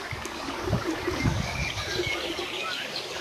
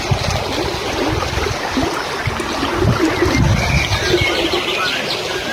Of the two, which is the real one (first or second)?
second